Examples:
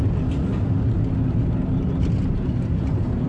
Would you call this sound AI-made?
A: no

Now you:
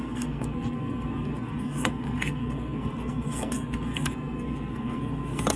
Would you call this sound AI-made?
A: yes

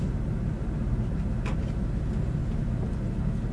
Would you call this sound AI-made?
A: no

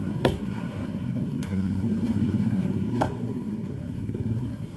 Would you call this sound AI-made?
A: yes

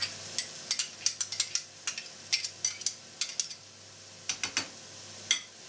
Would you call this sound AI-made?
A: no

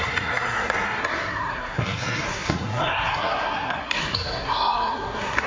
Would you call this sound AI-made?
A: yes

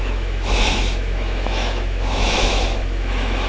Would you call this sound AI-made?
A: yes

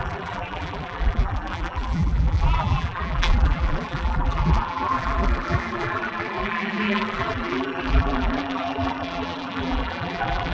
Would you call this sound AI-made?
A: yes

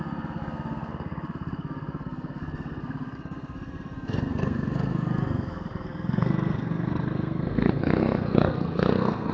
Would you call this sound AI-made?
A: yes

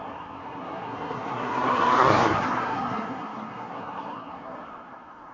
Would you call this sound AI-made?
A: yes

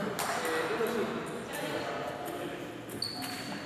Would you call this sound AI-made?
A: no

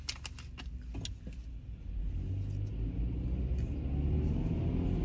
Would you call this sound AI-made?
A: no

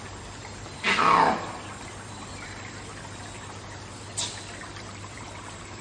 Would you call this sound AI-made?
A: no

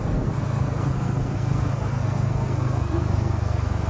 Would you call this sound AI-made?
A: yes